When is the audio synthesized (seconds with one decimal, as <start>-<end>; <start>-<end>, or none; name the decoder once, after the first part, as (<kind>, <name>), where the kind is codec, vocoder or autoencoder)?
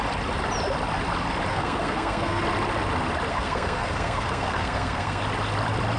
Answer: 1.5-2.4 (codec, SNAC); 3.3-5.2